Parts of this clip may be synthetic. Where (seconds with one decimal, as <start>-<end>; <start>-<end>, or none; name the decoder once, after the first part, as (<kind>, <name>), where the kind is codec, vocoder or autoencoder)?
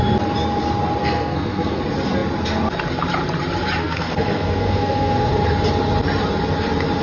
1.0-1.8 (codec, SNAC); 3.8-5.3